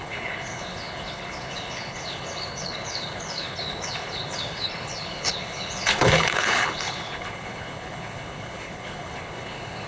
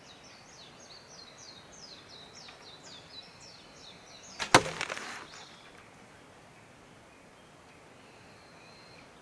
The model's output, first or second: first